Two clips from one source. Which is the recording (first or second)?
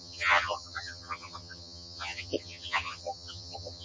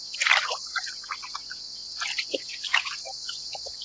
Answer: second